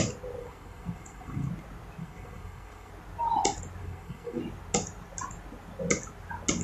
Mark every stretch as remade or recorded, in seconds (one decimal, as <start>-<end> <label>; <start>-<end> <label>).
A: 0.0-0.4 recorded; 0.4-1.5 remade; 1.5-2.0 recorded; 2.0-2.9 remade; 2.9-3.8 recorded; 3.8-4.4 remade; 4.4-6.6 recorded